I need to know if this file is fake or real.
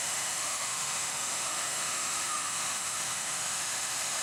fake